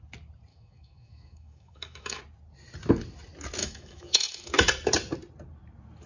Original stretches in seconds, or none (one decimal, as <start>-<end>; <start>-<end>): 0.0-0.5; 2.2-3.6; 4.5-6.1